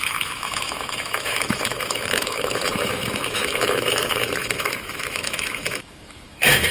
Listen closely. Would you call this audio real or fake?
fake